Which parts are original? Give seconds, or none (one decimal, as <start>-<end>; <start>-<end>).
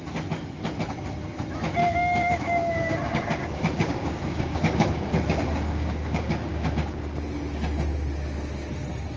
0.0-1.8; 6.7-9.2